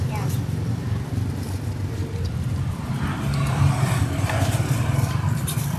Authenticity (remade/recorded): remade